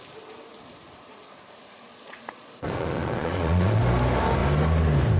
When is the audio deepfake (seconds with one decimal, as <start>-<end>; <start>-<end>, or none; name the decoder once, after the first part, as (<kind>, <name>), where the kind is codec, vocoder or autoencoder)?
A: 1.9-3.8 (vocoder, Vocos)